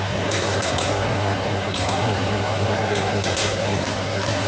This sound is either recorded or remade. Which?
remade